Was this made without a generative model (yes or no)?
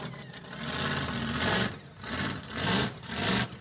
yes